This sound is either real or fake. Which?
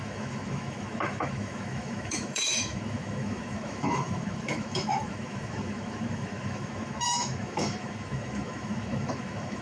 fake